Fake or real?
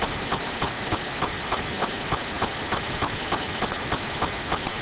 real